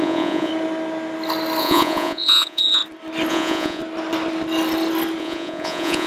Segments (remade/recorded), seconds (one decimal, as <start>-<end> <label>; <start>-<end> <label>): 0.0-0.5 remade; 0.5-1.6 recorded; 1.6-2.8 remade; 2.8-3.3 recorded; 3.3-3.8 remade; 3.8-5.2 recorded; 5.2-6.1 remade